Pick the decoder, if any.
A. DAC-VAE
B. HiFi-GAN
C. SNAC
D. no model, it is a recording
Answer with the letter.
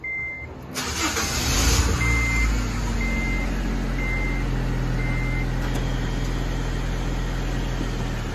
D